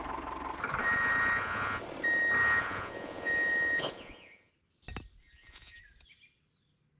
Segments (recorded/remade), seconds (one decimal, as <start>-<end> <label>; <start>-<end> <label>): 0.0-0.8 recorded; 0.8-1.8 remade; 1.8-2.4 recorded; 2.4-4.5 remade; 4.5-5.2 recorded; 5.2-5.8 remade; 5.8-7.0 recorded